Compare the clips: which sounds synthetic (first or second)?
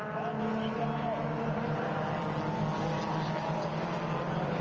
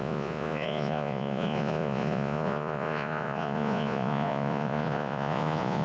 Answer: second